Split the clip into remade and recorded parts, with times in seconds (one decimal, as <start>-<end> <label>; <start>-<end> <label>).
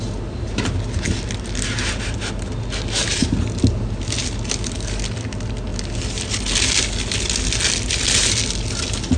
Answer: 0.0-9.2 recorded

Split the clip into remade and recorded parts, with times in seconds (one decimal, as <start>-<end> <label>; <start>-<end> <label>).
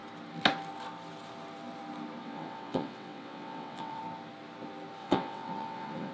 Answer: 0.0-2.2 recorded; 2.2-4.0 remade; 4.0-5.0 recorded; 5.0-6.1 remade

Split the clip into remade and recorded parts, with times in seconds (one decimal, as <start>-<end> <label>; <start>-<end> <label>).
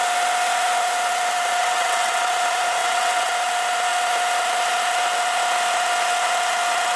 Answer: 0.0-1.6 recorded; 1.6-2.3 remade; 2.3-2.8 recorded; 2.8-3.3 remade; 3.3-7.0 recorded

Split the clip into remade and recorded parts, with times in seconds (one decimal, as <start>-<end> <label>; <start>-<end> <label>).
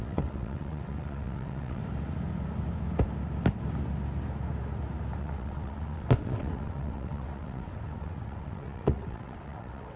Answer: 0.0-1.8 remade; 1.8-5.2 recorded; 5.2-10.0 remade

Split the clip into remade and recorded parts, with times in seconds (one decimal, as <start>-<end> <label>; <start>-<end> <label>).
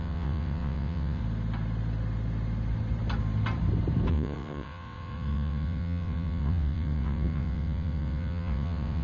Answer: 0.0-1.2 remade; 1.2-4.1 recorded; 4.1-9.0 remade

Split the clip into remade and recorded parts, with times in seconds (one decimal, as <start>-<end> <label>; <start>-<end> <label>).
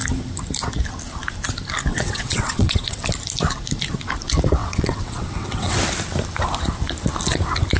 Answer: 0.0-1.9 recorded; 1.9-3.0 remade; 3.0-4.6 recorded; 4.6-5.8 remade; 5.8-7.8 recorded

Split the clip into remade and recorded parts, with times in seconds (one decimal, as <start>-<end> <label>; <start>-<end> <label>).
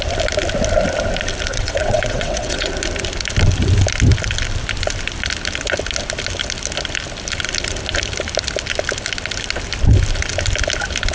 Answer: 0.0-1.5 recorded; 1.5-2.7 remade; 2.7-11.1 recorded